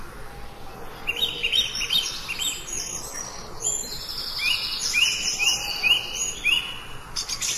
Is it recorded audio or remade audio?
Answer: recorded